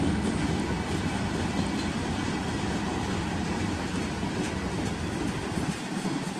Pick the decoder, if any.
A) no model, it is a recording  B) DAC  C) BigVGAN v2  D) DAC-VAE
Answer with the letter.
A